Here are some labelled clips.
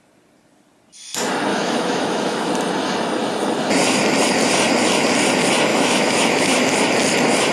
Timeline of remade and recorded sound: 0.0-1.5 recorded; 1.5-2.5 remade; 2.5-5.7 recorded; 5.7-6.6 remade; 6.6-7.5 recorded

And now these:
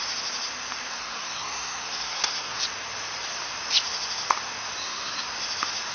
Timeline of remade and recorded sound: 0.0-0.9 recorded; 0.9-2.6 remade; 2.6-4.8 recorded; 4.8-5.3 remade; 5.3-5.9 recorded

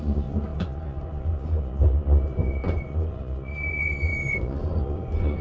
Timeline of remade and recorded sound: 0.0-5.4 remade

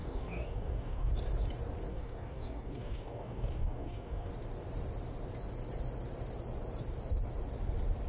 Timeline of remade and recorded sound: 0.0-1.1 remade; 1.1-1.9 recorded; 1.9-4.3 remade; 4.3-8.1 recorded

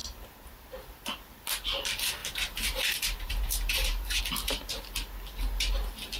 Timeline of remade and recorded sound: 0.0-2.2 recorded; 2.2-4.2 remade; 4.2-6.2 recorded

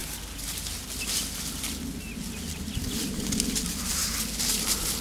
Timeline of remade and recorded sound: 0.0-5.0 recorded

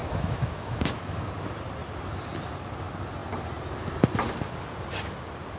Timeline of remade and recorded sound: 0.0-1.2 remade; 1.2-5.6 recorded

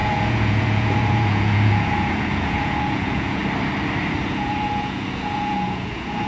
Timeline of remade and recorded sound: 0.0-3.4 remade; 3.4-4.2 recorded; 4.2-6.3 remade